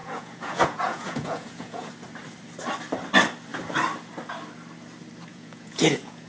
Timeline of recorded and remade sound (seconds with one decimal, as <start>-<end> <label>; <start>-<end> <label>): 0.0-1.9 remade; 1.9-5.3 recorded; 5.3-6.3 remade

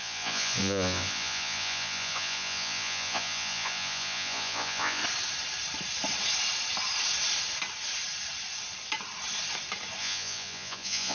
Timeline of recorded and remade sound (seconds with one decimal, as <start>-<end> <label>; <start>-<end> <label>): 0.0-5.0 remade; 5.0-10.0 recorded; 10.0-11.1 remade

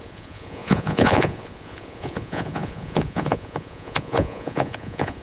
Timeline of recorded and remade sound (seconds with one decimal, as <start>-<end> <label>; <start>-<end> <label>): 0.0-5.2 remade

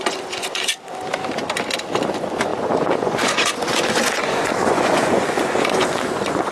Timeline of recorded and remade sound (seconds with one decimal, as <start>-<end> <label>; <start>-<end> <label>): 0.0-0.7 remade; 0.7-2.1 recorded; 2.1-6.5 remade

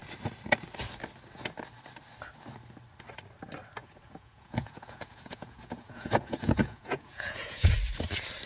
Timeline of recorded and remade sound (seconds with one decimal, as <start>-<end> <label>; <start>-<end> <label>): 0.0-3.8 recorded; 3.8-7.7 remade; 7.7-8.5 recorded

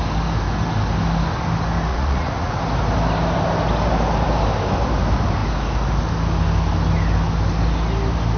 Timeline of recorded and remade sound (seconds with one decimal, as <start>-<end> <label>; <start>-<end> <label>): 0.0-1.9 recorded; 1.9-2.6 remade; 2.6-8.4 recorded

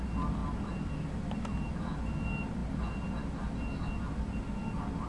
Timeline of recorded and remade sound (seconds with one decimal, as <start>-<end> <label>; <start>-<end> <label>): 0.0-5.1 recorded